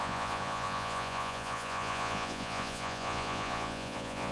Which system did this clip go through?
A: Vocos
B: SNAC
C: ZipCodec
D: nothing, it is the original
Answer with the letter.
A